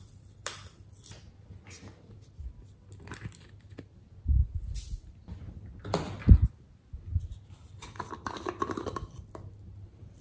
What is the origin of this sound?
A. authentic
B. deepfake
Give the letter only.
A